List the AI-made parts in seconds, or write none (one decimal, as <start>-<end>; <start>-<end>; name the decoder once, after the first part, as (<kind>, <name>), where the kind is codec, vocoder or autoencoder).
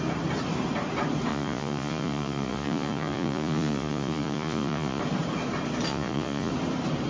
1.3-5.0 (vocoder, Vocos); 5.9-6.5